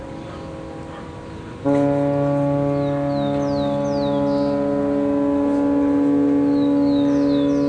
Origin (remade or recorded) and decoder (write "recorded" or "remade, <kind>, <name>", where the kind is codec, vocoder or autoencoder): recorded